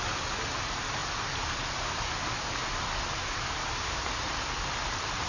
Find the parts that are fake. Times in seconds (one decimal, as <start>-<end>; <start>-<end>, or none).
none